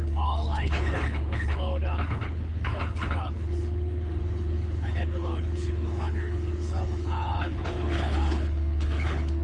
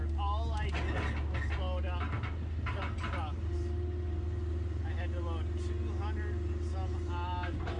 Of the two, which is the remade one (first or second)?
first